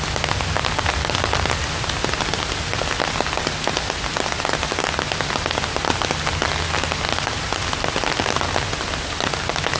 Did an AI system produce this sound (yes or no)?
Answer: no